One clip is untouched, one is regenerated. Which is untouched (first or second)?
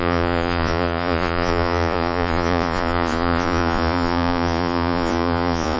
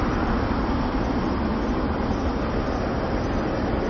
second